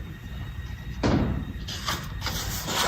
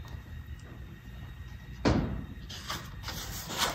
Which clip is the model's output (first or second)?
first